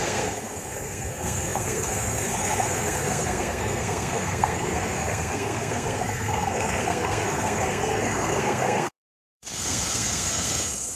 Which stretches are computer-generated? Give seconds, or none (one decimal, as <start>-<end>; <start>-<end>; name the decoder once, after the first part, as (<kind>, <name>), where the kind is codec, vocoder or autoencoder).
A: 0.0-11.0 (codec, SNAC)